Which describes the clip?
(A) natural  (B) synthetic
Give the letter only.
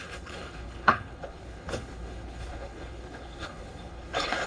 B